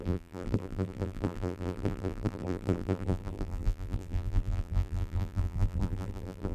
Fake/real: fake